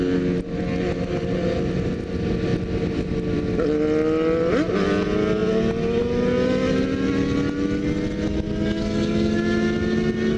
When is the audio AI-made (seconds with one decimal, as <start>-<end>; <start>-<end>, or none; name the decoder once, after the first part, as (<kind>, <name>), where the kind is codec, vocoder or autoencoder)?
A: 2.5-3.4 (vocoder, BigVGAN v2)